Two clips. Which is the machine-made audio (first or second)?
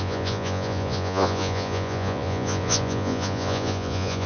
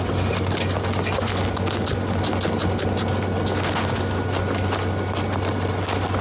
first